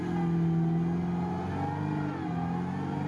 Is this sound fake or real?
real